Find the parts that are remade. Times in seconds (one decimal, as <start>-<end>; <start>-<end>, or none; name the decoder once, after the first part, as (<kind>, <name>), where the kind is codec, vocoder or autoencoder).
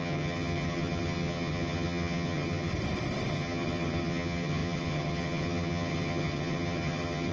0.0-2.7 (vocoder, HiFi-GAN); 3.3-7.3